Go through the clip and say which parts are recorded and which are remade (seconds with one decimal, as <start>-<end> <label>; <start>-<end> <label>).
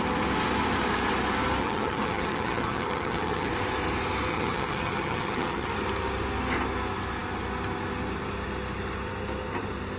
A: 0.0-1.6 recorded; 1.6-3.5 remade; 3.5-4.3 recorded; 4.3-5.7 remade; 5.7-10.0 recorded